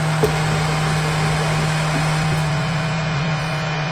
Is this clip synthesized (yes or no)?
no